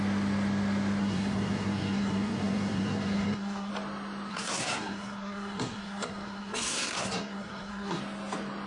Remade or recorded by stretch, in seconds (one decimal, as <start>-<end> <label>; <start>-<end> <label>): 0.0-1.0 recorded; 1.0-3.7 remade; 3.7-4.3 recorded; 4.3-8.0 remade; 8.0-8.7 recorded